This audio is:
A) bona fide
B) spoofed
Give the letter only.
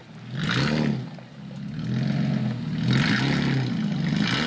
A